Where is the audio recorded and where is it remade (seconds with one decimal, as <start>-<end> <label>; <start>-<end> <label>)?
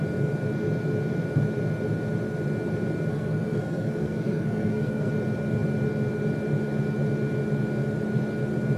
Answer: 0.0-3.1 recorded; 3.1-5.1 remade; 5.1-8.8 recorded